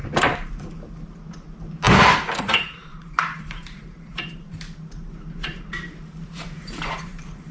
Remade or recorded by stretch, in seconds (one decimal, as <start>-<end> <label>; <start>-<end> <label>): 0.0-2.4 recorded; 2.4-7.5 remade